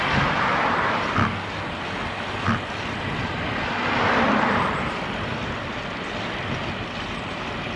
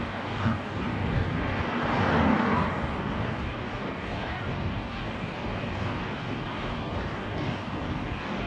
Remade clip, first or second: second